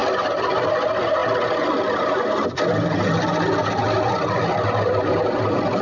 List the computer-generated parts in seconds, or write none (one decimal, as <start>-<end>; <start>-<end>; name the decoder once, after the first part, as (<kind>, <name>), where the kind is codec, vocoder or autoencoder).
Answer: none